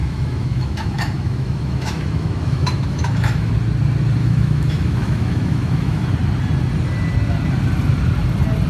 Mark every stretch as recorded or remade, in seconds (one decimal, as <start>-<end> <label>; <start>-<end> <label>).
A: 0.0-3.5 remade; 3.5-4.2 recorded; 4.2-6.1 remade; 6.1-8.7 recorded